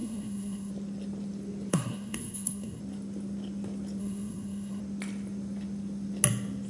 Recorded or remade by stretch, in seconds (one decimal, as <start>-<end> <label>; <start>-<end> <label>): 0.0-0.7 remade; 0.7-1.7 recorded; 1.7-2.8 remade; 2.8-4.0 recorded; 4.0-4.8 remade; 4.8-6.7 recorded